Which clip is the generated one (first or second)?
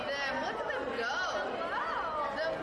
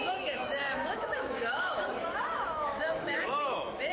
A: second